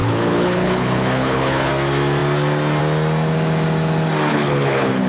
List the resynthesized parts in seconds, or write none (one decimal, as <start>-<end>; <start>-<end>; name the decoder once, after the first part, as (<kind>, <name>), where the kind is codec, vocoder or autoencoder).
0.0-1.7 (codec, HILCodec); 4.3-5.1